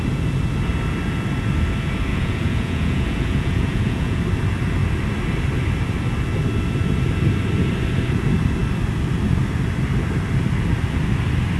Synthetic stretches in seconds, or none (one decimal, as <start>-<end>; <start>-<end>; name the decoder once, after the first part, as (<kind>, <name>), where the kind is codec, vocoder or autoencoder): 2.1-4.2 (vocoder, Vocos)